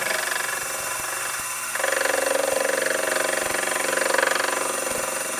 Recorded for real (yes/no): no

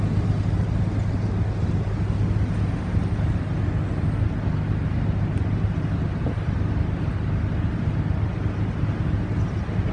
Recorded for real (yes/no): yes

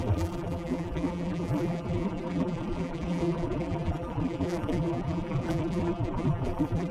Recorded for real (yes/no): no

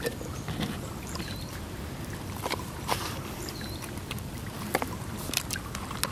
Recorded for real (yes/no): no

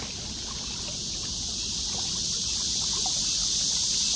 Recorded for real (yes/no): yes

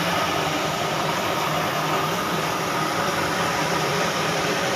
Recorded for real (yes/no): no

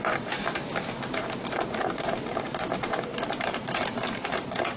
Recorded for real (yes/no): no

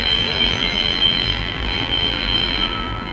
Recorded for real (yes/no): no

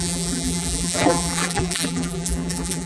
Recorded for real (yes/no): no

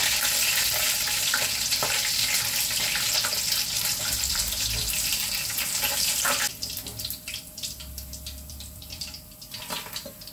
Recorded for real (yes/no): no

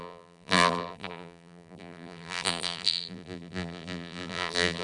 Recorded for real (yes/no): no